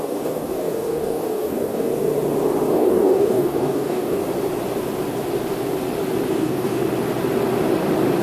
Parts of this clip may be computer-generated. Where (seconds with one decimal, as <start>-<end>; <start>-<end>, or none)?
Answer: 0.0-1.9; 2.7-4.2; 6.3-6.8